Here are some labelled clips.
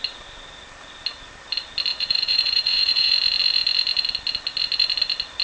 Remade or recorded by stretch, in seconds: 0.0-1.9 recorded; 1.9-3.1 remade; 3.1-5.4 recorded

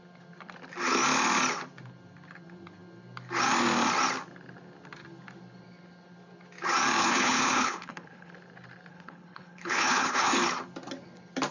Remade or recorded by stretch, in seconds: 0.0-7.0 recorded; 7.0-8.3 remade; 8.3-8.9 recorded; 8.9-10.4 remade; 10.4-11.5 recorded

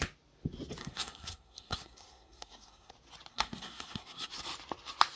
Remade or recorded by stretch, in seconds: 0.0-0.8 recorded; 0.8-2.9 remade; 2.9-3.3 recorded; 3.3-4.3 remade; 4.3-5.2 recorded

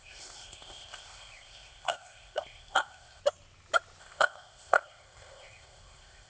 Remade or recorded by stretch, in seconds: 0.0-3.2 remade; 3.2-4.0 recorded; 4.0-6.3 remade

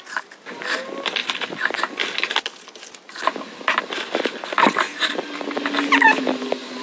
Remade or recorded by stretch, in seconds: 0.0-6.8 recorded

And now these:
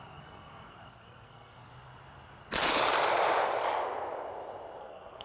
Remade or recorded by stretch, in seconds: 0.0-1.7 remade; 1.7-4.8 recorded; 4.8-5.2 remade